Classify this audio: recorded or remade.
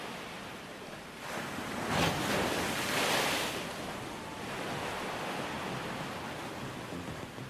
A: recorded